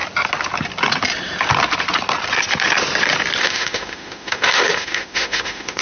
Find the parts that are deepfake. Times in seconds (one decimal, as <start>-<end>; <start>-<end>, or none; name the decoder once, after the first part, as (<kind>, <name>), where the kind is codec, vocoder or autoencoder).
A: 3.4-5.8 (autoencoder, DAC-VAE)